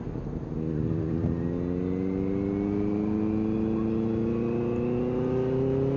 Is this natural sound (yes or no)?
yes